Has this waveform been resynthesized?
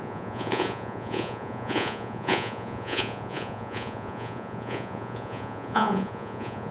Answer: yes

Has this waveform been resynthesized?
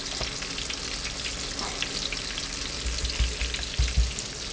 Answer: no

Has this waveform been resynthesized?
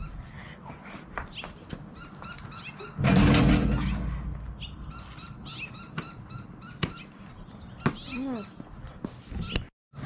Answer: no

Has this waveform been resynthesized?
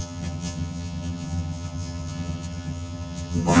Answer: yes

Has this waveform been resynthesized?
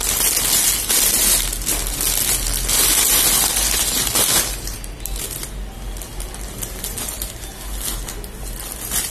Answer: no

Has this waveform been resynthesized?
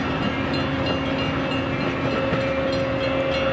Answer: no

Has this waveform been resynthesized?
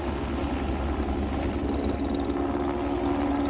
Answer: no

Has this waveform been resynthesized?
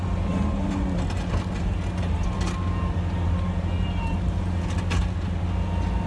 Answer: no